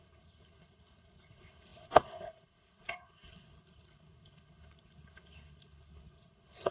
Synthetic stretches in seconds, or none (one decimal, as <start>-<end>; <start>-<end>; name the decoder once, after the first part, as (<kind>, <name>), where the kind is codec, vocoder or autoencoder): 0.0-6.7 (codec, HILCodec)